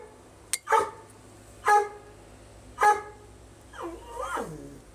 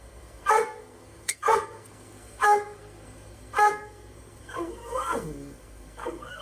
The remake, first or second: second